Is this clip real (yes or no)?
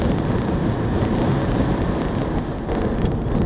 yes